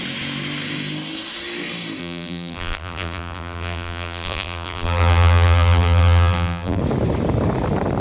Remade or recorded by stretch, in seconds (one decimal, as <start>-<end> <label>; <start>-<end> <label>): 0.0-2.0 recorded; 2.0-6.8 remade; 6.8-8.0 recorded